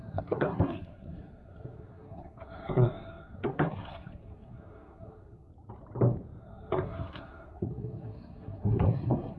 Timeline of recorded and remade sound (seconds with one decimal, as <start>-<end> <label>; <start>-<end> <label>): 0.0-5.5 remade; 5.5-6.4 recorded; 6.4-9.4 remade